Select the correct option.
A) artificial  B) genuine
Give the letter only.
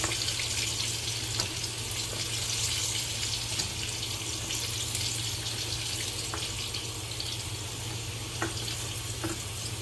B